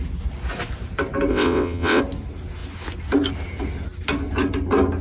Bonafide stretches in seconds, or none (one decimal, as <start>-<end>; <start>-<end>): 0.0-1.3; 2.0-5.0

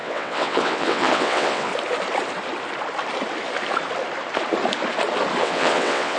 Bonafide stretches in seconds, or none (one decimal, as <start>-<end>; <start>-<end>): 1.7-5.4

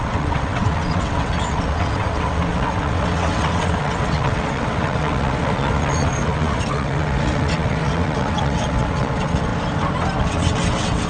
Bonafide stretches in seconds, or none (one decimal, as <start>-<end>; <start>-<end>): 9.5-10.2

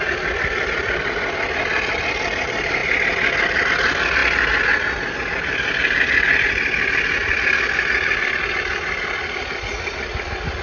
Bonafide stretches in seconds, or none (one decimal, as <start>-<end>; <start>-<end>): 0.0-10.6

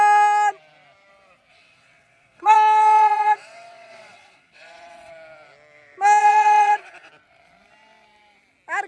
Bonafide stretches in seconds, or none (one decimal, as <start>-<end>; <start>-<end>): 0.0-1.5; 5.1-6.2; 7.1-8.9

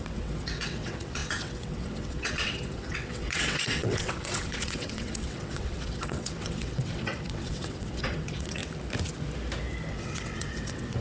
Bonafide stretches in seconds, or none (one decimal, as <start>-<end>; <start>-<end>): 8.6-9.9